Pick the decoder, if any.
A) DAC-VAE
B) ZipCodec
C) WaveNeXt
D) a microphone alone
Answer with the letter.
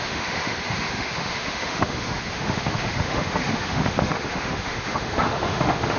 A